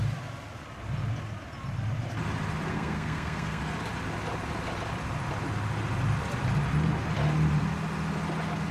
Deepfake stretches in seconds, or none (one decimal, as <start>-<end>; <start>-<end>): 2.7-3.6